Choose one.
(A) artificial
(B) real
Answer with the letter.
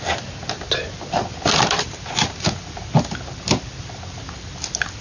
B